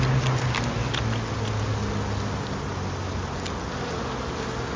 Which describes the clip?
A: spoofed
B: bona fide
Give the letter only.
B